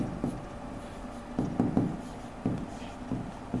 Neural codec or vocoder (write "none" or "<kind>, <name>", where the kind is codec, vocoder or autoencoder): none